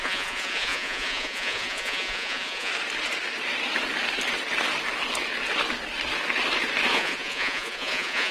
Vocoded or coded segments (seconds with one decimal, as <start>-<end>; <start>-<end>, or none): 0.0-2.7; 6.9-8.3